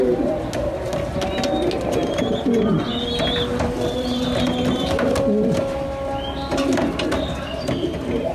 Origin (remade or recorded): recorded